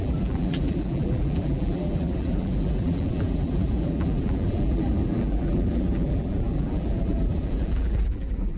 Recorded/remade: remade